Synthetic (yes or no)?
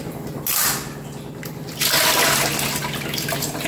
no